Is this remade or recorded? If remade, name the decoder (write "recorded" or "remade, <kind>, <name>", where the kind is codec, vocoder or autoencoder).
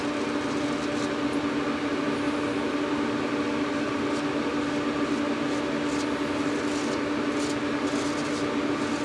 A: recorded